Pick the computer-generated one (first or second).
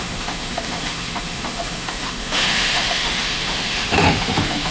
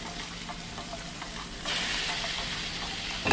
first